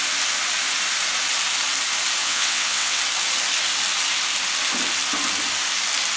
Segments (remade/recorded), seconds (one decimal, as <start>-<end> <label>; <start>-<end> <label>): 0.0-2.2 recorded; 2.2-3.0 remade; 3.0-6.2 recorded